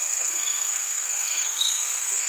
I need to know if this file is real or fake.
fake